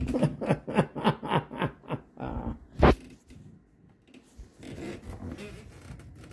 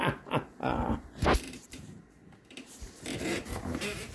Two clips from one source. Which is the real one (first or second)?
first